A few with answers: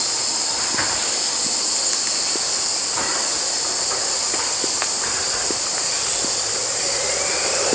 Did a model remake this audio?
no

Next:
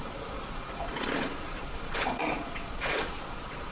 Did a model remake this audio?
yes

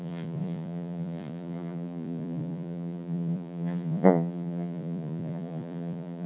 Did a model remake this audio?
yes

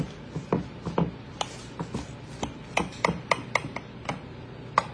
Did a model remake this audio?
no